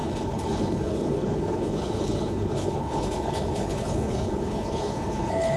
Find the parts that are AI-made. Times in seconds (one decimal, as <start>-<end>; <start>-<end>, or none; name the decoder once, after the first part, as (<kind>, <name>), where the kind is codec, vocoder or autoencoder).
0.0-5.6 (codec, HILCodec)

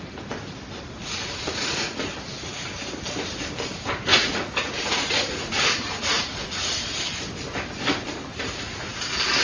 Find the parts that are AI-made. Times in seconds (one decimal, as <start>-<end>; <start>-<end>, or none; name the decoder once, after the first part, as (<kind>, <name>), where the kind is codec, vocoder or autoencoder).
1.0-2.1 (vocoder, Vocos); 4.1-6.9; 8.3-8.9

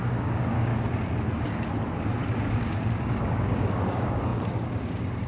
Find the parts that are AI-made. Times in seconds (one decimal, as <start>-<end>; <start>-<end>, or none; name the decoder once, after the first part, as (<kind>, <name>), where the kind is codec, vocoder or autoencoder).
0.0-0.7 (codec, DAC); 2.4-5.3

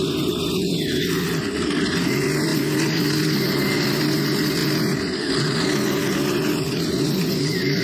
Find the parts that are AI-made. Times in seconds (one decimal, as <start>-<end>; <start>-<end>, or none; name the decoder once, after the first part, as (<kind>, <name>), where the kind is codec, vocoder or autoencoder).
none

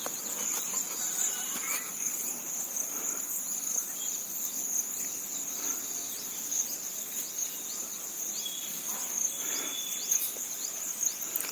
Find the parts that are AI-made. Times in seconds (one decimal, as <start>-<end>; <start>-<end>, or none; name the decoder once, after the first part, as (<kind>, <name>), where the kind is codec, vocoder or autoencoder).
0.5-2.3 (vocoder, BigVGAN v2)

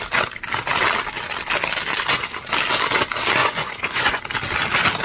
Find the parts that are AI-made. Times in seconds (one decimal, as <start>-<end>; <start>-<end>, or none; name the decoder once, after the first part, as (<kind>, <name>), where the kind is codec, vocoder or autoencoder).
3.4-4.2 (vocoder, Vocos)

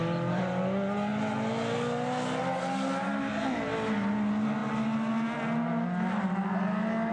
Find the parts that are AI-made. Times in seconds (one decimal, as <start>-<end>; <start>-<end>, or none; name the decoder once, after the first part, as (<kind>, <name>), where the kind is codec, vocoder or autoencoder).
none

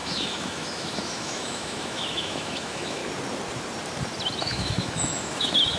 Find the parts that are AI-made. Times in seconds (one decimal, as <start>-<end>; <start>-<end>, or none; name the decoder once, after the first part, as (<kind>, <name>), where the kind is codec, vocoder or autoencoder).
0.0-3.0 (autoencoder, DAC-VAE); 4.4-5.8